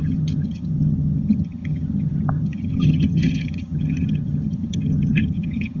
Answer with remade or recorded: remade